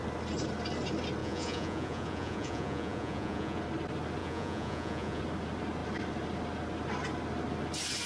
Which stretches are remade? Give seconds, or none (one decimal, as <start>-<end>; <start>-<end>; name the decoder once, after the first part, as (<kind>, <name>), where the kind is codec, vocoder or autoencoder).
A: 1.2-3.6 (vocoder, Vocos); 4.2-5.2